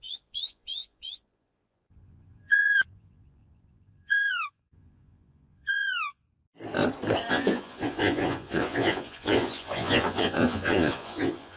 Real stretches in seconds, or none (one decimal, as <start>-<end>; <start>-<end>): 6.2-7.3